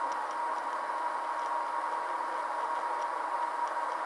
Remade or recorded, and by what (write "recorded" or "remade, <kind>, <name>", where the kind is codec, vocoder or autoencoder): recorded